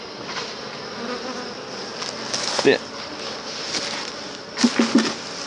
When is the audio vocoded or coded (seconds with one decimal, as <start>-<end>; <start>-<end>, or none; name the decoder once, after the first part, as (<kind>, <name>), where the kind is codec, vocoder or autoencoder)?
none